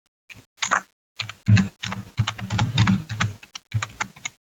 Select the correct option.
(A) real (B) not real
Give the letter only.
A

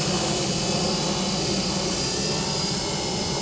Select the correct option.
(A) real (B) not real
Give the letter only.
A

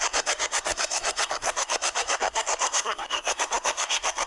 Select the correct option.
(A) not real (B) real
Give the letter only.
A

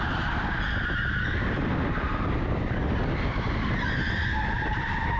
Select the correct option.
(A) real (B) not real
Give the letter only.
A